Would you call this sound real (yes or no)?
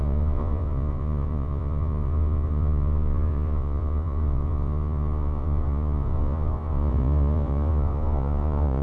no